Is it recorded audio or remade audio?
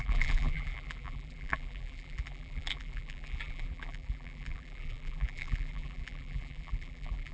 remade